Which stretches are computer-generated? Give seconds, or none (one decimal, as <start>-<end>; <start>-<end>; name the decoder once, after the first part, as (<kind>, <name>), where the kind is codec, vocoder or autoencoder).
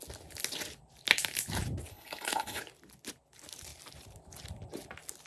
1.9-2.6 (codec, HILCodec)